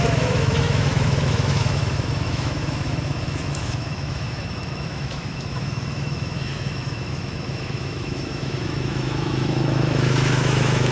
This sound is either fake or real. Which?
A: fake